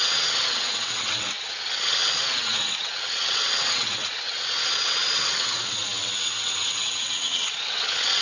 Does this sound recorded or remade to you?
remade